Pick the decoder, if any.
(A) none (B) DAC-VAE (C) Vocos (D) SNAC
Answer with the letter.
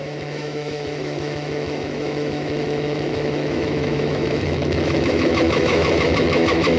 B